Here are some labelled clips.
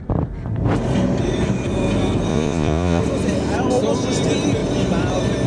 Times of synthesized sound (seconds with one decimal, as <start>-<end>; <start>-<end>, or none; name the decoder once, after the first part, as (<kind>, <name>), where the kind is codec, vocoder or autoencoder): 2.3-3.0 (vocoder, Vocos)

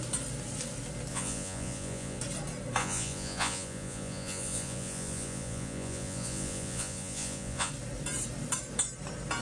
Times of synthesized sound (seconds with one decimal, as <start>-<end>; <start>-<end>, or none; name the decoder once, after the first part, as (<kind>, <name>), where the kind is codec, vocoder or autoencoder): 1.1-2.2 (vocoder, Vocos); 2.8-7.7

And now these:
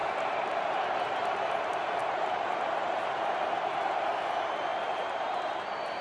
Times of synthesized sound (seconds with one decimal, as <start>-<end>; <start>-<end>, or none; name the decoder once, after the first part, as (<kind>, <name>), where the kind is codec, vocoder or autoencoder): 0.0-1.6 (vocoder, BigVGAN v2); 2.0-4.3; 4.7-6.0

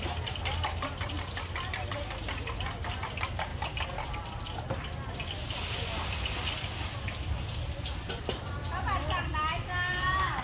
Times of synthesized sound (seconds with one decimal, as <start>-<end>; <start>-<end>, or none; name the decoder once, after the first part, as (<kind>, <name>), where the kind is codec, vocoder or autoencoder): 9.5-10.4 (codec, DAC)